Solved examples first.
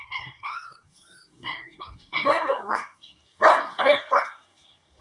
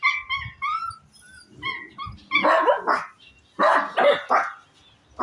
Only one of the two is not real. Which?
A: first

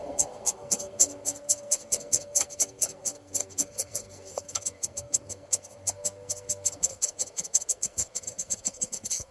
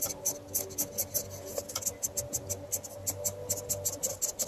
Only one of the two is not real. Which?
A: first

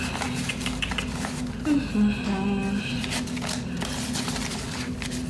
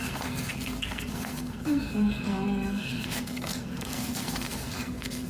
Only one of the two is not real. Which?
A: second